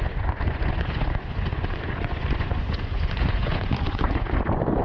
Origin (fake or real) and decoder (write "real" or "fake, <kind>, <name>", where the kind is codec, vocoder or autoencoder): fake, vocoder, Vocos